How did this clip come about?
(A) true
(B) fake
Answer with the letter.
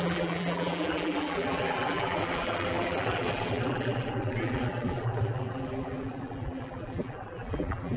B